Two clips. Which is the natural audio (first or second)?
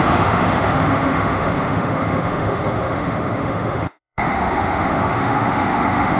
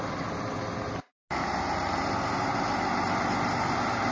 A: second